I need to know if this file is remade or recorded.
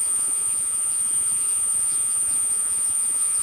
remade